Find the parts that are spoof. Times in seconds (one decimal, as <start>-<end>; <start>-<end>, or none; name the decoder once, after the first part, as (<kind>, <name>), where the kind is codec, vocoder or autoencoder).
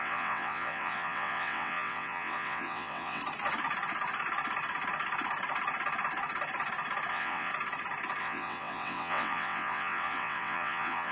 0.0-3.2 (vocoder, WaveNeXt); 7.1-7.5; 8.2-11.1